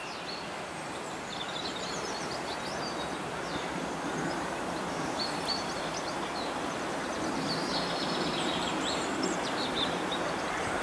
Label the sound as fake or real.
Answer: fake